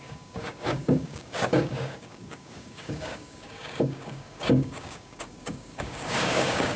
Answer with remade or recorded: remade